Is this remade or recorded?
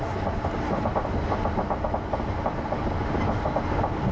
recorded